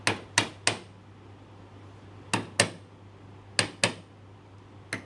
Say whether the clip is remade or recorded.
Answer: recorded